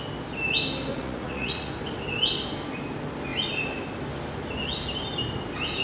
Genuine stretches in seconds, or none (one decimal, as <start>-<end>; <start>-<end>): 0.0-0.9; 1.7-5.8